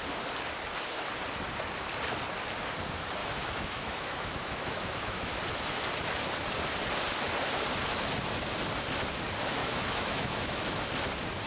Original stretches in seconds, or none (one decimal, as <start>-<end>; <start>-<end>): 0.0-3.2; 5.4-9.6; 10.8-11.5